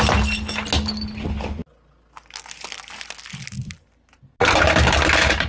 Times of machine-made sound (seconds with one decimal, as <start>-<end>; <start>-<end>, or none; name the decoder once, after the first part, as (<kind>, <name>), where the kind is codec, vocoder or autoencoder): none